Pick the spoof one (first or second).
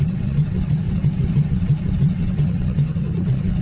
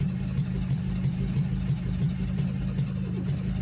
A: first